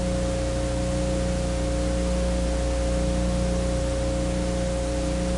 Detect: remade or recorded recorded